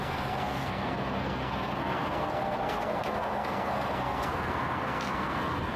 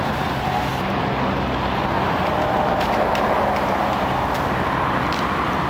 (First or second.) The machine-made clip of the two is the first